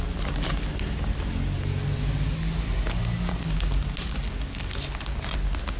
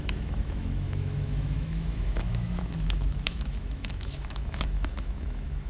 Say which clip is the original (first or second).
first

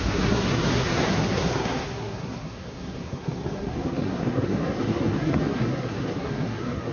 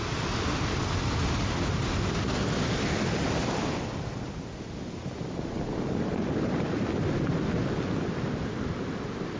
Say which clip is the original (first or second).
second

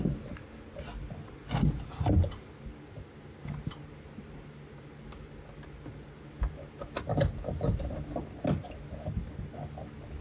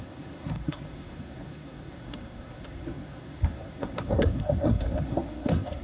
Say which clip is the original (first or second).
first